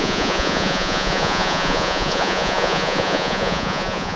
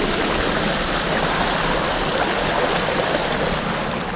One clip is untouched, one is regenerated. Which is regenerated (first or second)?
first